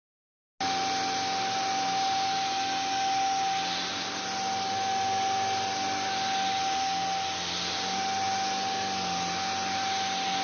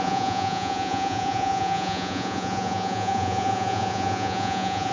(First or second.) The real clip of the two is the first